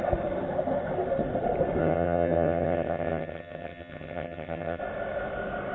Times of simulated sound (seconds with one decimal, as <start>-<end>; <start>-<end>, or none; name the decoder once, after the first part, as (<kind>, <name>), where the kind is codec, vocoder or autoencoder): 1.8-4.8 (vocoder, HiFi-GAN)